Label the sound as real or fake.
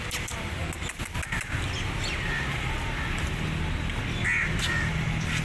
real